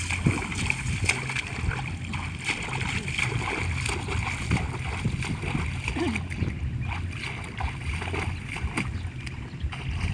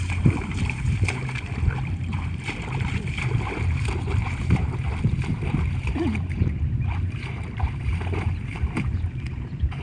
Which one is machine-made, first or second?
second